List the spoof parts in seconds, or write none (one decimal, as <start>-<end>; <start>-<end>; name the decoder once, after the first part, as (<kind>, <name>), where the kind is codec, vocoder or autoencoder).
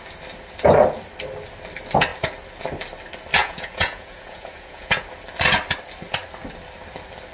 3.4-5.0 (vocoder, Vocos)